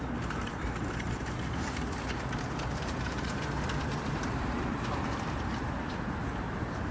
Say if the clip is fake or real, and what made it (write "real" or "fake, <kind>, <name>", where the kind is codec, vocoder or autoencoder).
fake, vocoder, BigVGAN v2